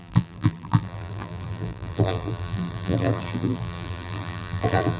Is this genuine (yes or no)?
no